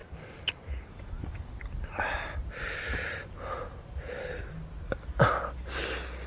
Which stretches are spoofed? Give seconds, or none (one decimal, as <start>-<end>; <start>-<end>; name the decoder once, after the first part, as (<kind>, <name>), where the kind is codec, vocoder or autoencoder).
none